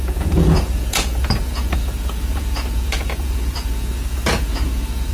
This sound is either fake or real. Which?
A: fake